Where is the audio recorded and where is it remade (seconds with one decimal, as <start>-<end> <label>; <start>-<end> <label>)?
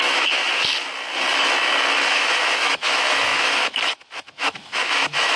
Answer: 0.0-0.4 remade; 0.4-2.1 recorded; 2.1-5.4 remade